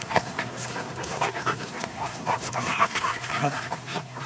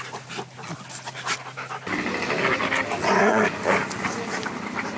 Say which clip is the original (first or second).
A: second